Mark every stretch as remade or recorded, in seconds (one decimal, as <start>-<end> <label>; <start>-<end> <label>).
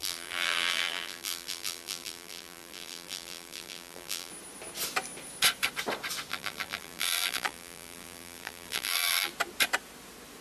0.0-4.3 remade; 4.3-6.3 recorded; 6.3-9.3 remade; 9.3-10.4 recorded